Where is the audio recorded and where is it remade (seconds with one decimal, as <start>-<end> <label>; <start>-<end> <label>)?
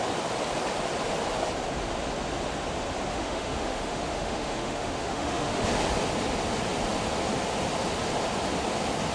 0.0-3.1 recorded; 3.1-5.7 remade; 5.7-9.1 recorded